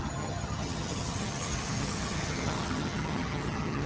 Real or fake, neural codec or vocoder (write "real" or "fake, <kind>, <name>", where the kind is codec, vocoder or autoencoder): fake, vocoder, HiFi-GAN